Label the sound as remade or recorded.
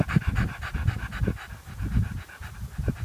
recorded